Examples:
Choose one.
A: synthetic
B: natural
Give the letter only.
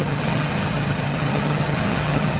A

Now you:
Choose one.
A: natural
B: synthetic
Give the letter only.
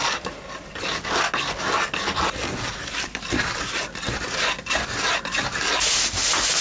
A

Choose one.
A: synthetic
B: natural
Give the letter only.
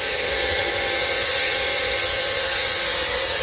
A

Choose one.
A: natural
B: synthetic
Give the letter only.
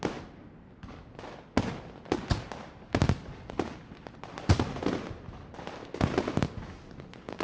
A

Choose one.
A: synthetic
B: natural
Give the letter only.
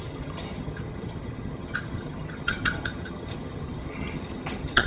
A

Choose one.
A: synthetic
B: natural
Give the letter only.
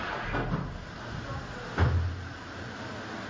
B